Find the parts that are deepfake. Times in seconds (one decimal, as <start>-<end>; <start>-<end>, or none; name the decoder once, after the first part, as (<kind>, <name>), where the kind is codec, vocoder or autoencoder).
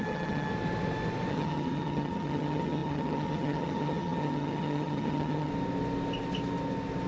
0.0-0.5 (vocoder, HiFi-GAN); 1.3-5.5